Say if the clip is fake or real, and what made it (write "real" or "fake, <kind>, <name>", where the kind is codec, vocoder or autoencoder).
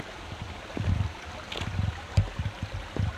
real